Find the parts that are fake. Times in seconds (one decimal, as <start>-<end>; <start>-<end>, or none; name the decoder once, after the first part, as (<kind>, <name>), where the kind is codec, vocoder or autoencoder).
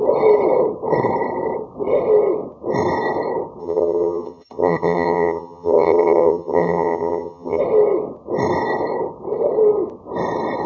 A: 3.6-7.6 (vocoder, HiFi-GAN)